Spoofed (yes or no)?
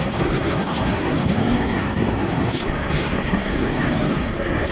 yes